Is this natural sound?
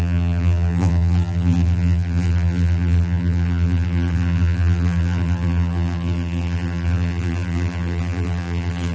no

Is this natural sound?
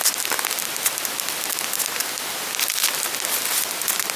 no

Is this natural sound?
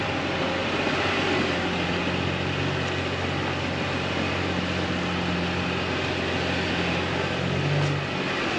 yes